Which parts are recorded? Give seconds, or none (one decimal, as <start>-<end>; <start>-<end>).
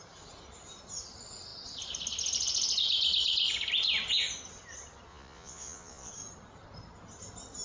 0.0-5.1; 6.1-7.6